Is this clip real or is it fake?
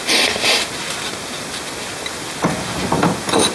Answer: real